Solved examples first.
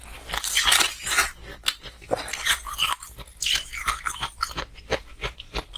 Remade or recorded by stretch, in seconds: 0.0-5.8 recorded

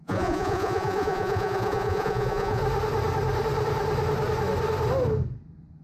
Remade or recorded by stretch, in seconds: 0.0-2.6 remade; 2.6-5.8 recorded